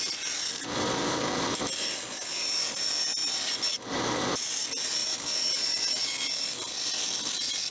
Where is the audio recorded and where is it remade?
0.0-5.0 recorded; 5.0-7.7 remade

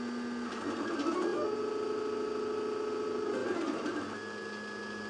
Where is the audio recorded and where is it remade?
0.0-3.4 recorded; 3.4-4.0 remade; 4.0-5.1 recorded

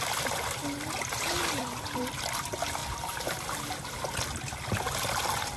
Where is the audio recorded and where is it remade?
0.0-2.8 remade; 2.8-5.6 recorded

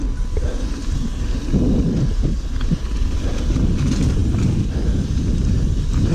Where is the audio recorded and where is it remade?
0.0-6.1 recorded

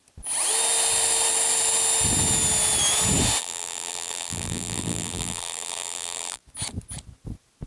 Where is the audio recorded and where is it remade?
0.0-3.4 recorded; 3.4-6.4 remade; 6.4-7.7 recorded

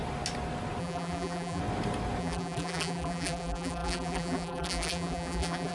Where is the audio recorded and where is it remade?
0.0-0.8 recorded; 0.8-1.6 remade; 1.6-2.2 recorded; 2.2-5.7 remade

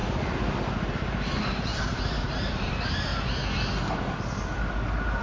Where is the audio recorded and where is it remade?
0.0-0.7 recorded; 0.7-3.1 remade; 3.1-5.2 recorded

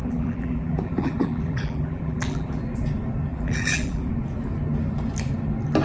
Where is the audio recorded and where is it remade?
0.0-2.6 remade; 2.6-3.3 recorded; 3.3-4.1 remade; 4.1-5.8 recorded